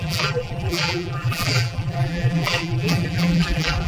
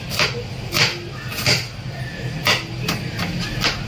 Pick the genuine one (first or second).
second